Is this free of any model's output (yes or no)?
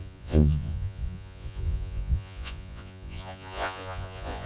no